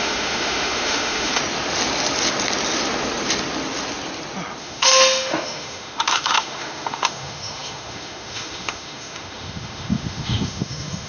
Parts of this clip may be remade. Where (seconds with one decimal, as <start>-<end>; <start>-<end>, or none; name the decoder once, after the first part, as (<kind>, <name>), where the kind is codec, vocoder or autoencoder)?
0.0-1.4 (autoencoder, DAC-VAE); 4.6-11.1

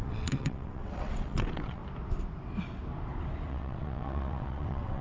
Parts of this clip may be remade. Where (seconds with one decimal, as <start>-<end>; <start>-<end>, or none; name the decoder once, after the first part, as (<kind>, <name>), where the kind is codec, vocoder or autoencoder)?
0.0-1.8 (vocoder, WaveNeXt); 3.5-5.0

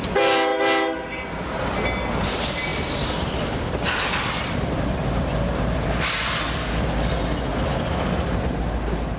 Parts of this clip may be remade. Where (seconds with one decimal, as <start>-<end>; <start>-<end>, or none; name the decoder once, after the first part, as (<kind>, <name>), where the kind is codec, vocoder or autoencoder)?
none